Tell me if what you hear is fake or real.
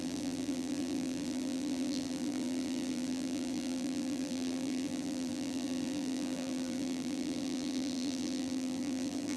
fake